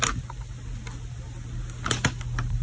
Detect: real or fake real